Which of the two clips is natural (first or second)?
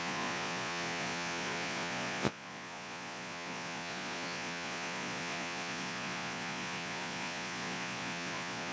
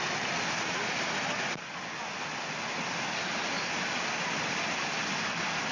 second